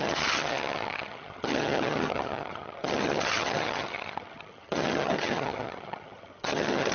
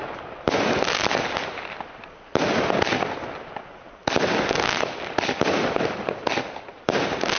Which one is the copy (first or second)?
first